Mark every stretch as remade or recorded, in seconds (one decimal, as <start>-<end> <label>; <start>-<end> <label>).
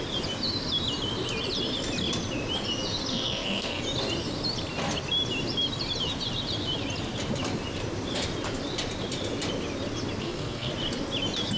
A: 0.0-3.1 recorded; 3.1-3.8 remade; 3.8-10.2 recorded; 10.2-10.7 remade; 10.7-11.6 recorded